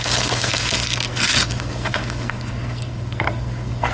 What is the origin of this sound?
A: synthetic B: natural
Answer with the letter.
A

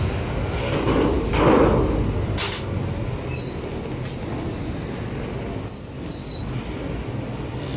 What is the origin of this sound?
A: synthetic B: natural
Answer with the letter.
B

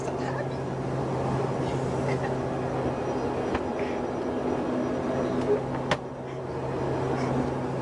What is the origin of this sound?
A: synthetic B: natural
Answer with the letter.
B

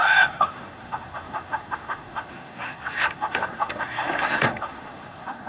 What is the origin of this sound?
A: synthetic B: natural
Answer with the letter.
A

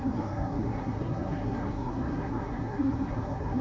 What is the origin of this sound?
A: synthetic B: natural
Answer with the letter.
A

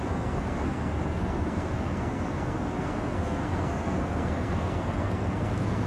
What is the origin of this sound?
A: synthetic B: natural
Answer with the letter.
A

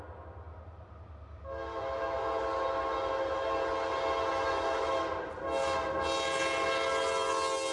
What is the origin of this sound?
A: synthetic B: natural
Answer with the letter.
B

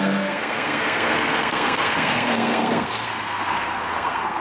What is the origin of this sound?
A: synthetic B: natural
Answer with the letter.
A